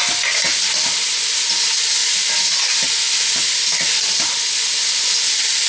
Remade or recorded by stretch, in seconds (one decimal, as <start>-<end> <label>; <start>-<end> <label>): 0.0-5.7 recorded